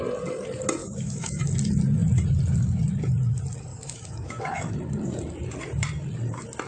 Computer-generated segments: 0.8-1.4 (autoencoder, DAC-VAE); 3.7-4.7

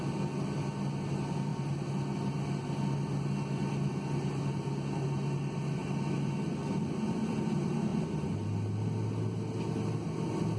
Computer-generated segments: none

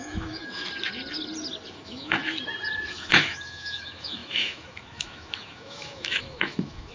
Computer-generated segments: 0.0-0.6 (autoencoder, DAC-VAE); 1.7-2.2; 2.9-6.9

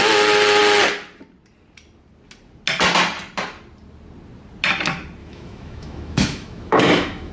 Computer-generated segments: 5.2-7.3 (autoencoder, DAC-VAE)

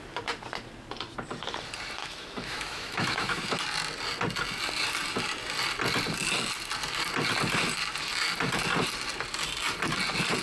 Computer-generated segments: 2.0-3.4 (autoencoder, DAC-VAE)